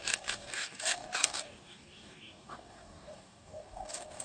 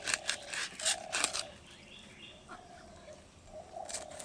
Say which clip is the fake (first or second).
first